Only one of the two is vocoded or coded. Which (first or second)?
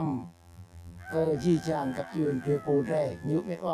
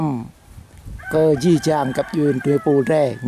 first